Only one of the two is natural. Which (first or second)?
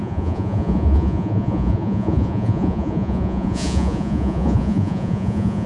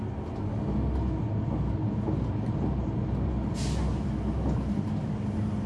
second